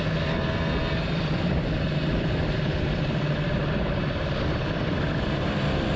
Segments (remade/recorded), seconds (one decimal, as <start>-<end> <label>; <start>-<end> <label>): 0.0-0.8 recorded; 0.8-3.7 remade; 3.7-6.0 recorded